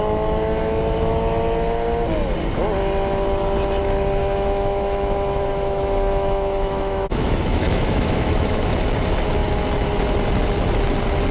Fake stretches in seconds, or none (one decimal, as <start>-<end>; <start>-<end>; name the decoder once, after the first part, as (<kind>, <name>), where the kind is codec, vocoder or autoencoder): 4.2-8.7 (autoencoder, DAC-VAE)